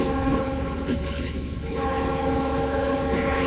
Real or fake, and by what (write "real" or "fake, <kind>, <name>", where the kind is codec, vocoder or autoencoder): fake, codec, HILCodec